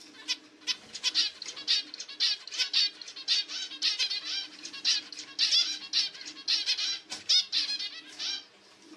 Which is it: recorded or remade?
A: recorded